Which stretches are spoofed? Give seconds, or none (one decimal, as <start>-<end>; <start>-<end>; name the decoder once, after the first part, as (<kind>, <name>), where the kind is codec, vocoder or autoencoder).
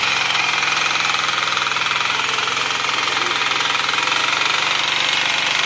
none